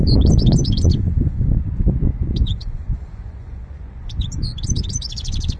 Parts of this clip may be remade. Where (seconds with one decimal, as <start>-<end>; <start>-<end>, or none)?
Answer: 0.0-5.6